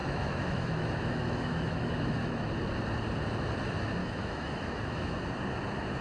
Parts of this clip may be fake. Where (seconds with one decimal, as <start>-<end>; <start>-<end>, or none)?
0.0-2.5; 4.0-5.2